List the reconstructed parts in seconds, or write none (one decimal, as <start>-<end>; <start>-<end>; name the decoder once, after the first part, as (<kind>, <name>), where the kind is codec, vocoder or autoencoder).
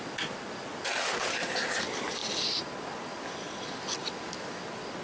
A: 0.0-2.2 (vocoder, BigVGAN v2); 2.8-5.0